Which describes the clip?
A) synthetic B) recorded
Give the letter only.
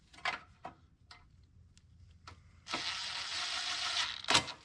B